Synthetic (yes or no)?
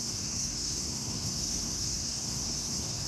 yes